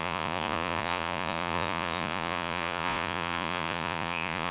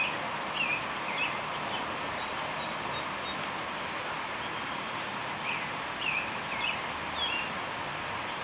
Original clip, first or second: second